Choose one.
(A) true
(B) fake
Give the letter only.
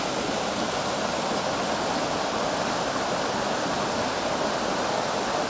A